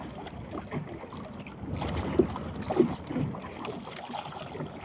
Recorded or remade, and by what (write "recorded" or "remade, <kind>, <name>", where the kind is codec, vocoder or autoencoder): recorded